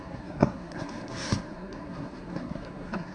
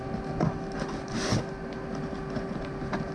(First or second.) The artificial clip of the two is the first